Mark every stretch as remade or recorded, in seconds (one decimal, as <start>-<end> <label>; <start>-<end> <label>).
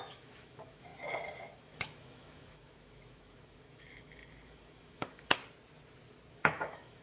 0.0-0.9 remade; 0.9-1.5 recorded; 1.5-5.4 remade; 5.4-6.3 recorded; 6.3-7.0 remade